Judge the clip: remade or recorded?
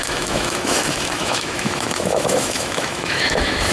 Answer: remade